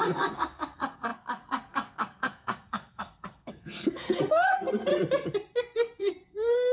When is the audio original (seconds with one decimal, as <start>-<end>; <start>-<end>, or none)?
4.9-5.6